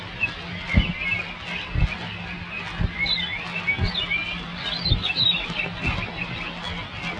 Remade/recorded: recorded